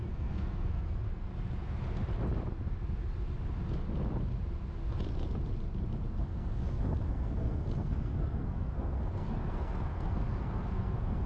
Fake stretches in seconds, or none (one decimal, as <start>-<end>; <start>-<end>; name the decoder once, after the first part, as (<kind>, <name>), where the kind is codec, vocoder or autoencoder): 0.0-1.3 (codec, SNAC); 6.2-11.3